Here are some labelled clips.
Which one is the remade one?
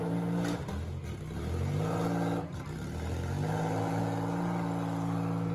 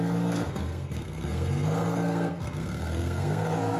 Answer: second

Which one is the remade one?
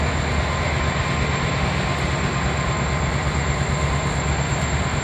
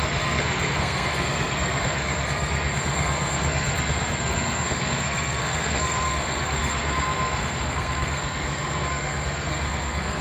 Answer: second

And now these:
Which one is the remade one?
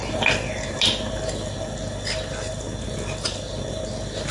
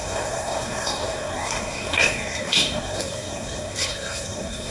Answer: second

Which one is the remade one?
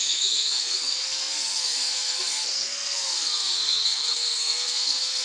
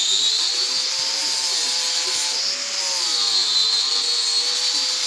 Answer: first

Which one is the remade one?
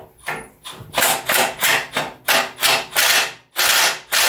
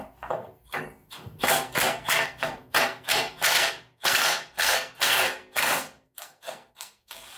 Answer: second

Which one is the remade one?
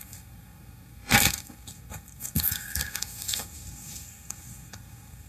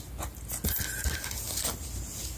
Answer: first